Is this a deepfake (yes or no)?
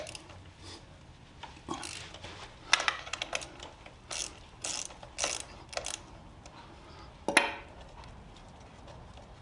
no